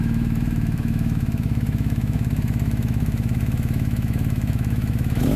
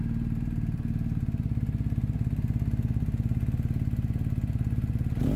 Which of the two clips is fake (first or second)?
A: first